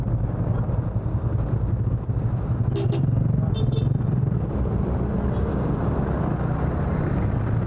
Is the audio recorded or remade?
recorded